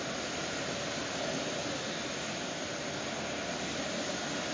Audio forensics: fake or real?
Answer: real